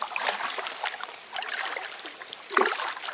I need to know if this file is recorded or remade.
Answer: recorded